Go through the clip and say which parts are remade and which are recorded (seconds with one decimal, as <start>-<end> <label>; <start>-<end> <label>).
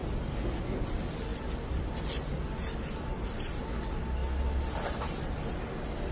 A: 0.0-6.1 recorded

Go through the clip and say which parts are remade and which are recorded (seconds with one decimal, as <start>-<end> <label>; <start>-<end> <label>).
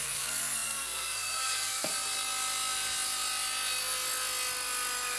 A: 0.0-1.9 remade; 1.9-5.2 recorded